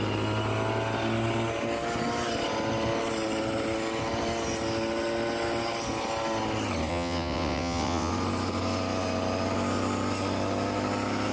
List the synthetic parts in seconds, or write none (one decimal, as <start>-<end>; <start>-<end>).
6.9-8.1